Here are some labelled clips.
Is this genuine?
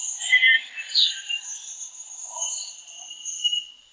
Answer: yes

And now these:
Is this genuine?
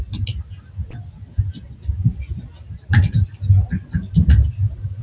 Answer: yes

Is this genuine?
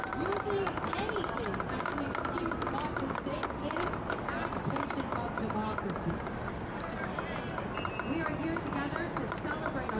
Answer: yes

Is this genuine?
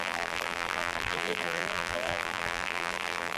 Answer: no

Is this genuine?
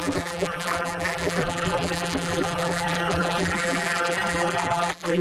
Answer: no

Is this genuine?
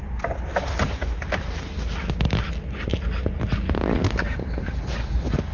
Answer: yes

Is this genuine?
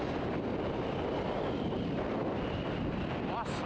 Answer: no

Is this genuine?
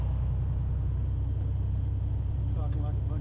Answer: yes